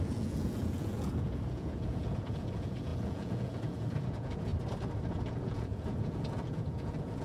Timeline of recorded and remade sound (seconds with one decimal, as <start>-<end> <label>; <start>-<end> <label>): 0.0-4.5 remade; 4.5-5.1 recorded; 5.1-7.2 remade